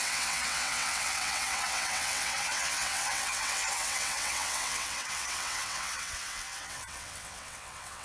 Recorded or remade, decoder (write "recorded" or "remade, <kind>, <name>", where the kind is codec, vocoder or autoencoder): remade, vocoder, WaveNeXt